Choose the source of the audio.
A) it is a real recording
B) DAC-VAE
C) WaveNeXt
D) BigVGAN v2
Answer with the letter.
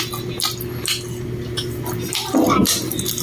A